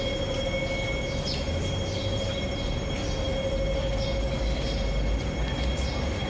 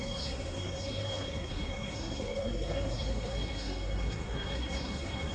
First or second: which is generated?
second